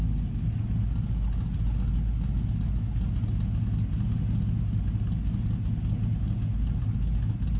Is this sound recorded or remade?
recorded